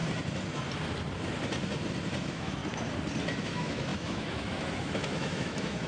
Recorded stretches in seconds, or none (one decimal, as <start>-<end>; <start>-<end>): 0.0-2.2; 2.6-3.4